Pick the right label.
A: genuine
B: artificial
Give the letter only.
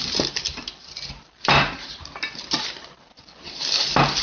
A